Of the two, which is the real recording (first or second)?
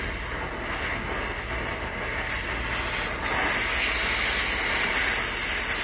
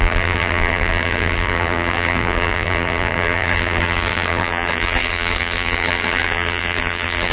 first